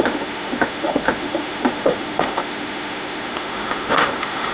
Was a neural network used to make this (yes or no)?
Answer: yes